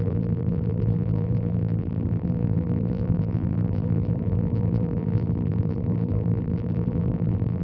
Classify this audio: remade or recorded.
remade